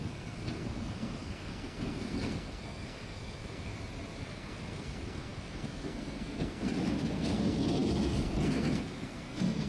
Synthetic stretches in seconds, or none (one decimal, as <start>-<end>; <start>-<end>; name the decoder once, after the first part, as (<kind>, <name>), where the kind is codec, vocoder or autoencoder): 0.0-3.7 (codec, SNAC); 4.2-9.7